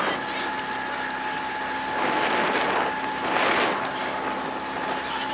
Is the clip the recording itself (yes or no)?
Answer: yes